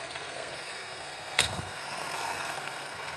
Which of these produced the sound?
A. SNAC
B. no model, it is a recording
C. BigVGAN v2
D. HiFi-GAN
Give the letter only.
A